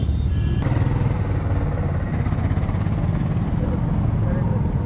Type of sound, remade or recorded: recorded